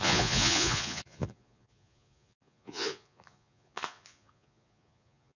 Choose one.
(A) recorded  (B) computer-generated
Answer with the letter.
B